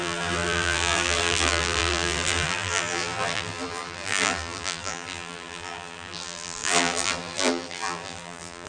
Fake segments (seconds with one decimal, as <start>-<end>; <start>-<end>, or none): 0.0-8.7